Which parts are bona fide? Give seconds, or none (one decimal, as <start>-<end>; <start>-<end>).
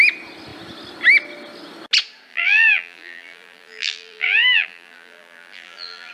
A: 0.0-2.3